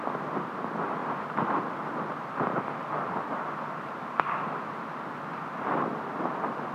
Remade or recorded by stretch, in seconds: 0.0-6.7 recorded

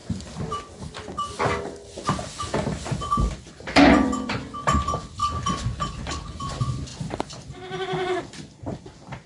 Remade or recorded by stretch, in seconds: 0.0-3.5 recorded; 3.5-6.9 remade; 6.9-8.2 recorded; 8.2-9.3 remade

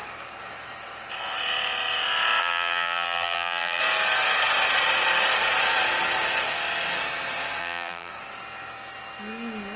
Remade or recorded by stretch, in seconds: 0.0-2.4 recorded; 2.4-3.8 remade; 3.8-7.6 recorded; 7.6-8.1 remade; 8.1-9.8 recorded

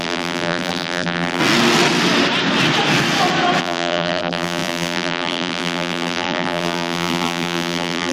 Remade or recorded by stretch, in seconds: 0.0-1.4 remade; 1.4-3.6 recorded; 3.6-8.1 remade

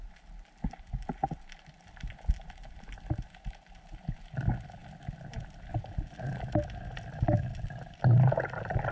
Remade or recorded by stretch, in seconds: 0.0-8.9 recorded

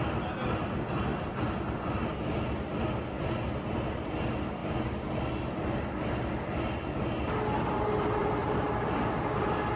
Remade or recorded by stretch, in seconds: 0.0-8.2 recorded; 8.2-8.8 remade; 8.8-9.8 recorded

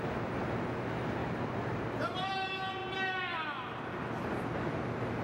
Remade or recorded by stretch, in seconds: 0.0-1.2 recorded; 1.2-2.3 remade; 2.3-5.2 recorded